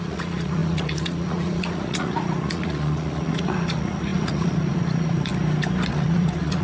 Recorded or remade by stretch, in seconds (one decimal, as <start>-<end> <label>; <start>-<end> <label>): 0.0-5.3 remade; 5.3-5.9 recorded; 5.9-6.6 remade